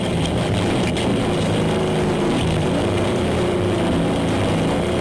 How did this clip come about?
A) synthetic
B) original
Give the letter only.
B